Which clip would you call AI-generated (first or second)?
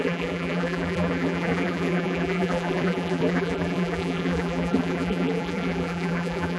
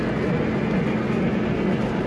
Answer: first